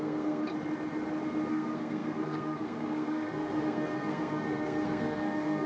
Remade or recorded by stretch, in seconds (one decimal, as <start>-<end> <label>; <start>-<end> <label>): 0.0-0.4 remade; 0.4-1.5 recorded; 1.5-5.7 remade